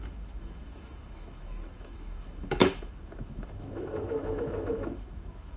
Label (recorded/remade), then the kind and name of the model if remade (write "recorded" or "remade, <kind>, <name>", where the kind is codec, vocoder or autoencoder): remade, autoencoder, DAC-VAE